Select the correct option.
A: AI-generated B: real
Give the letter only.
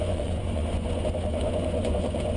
A